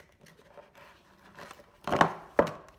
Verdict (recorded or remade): recorded